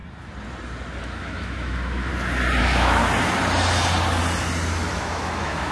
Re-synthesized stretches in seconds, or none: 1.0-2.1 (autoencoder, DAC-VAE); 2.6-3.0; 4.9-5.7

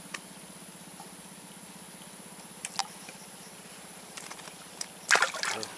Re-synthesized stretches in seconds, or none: 2.8-4.9 (vocoder, BigVGAN v2)

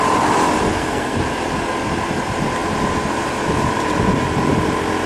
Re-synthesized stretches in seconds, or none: 0.7-1.2 (codec, SNAC)

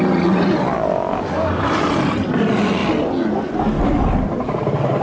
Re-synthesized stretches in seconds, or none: none

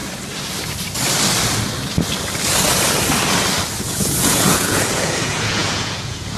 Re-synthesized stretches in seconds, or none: 3.8-6.4 (vocoder, Vocos)